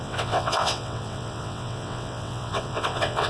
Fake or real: fake